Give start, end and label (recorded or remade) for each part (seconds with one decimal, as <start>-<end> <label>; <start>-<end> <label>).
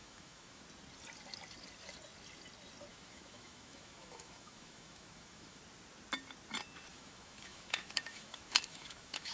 0.0-0.6 remade; 0.6-2.9 recorded; 2.9-5.6 remade; 5.6-6.9 recorded; 6.9-9.3 remade